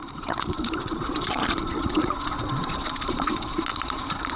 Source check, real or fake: fake